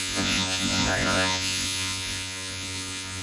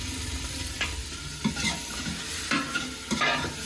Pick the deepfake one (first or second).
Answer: first